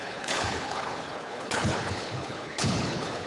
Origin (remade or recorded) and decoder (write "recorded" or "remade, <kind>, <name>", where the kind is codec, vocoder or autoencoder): remade, codec, HILCodec